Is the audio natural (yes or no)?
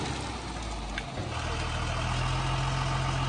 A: yes